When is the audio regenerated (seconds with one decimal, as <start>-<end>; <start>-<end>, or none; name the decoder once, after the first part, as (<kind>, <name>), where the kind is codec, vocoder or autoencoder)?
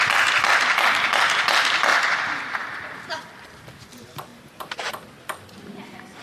1.9-3.5 (vocoder, BigVGAN v2); 4.3-4.9